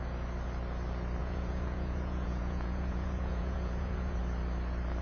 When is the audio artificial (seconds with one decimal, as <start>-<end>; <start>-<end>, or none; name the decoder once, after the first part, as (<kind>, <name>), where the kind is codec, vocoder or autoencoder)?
1.2-4.2 (vocoder, Vocos)